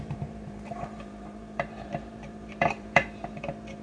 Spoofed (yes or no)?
yes